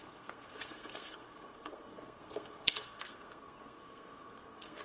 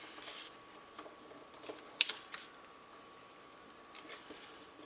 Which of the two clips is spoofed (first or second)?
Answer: first